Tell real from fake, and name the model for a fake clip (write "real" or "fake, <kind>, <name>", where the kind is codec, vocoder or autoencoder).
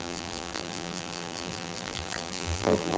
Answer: fake, vocoder, BigVGAN v2